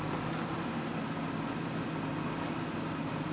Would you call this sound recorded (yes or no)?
yes